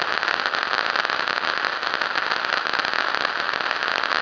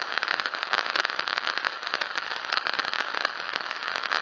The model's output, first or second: second